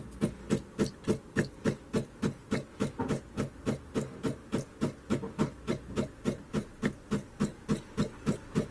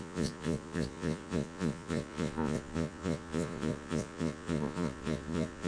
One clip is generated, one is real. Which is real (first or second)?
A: first